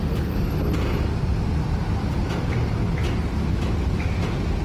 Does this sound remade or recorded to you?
recorded